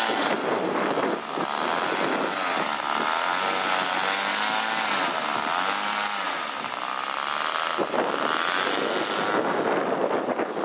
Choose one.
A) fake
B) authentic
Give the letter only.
B